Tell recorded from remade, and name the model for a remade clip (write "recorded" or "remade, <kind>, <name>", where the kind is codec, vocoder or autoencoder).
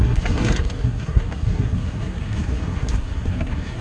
remade, codec, SNAC